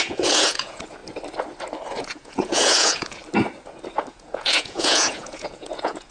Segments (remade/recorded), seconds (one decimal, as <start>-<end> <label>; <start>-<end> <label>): 0.0-1.0 remade; 1.0-2.0 recorded; 2.0-3.2 remade; 3.2-4.1 recorded; 4.1-6.1 remade